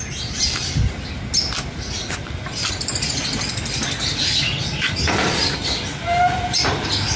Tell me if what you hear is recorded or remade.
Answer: recorded